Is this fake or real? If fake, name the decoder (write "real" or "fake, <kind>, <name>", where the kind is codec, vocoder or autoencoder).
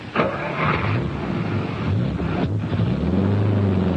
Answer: real